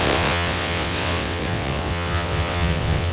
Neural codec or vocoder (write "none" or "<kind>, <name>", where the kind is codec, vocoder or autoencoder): vocoder, WaveNeXt